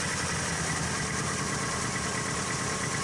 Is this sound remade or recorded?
recorded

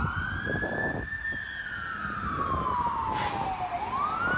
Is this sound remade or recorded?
recorded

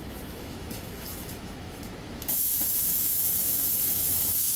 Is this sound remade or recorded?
remade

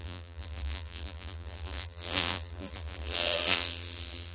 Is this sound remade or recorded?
remade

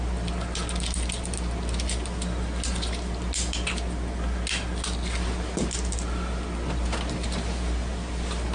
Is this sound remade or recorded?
recorded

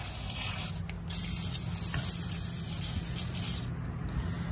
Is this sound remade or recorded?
recorded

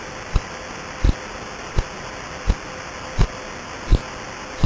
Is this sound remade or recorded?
recorded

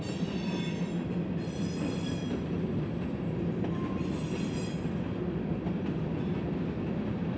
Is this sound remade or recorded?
recorded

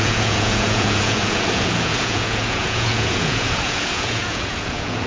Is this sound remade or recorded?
remade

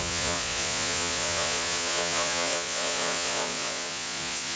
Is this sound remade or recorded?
remade